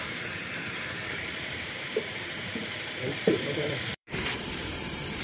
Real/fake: fake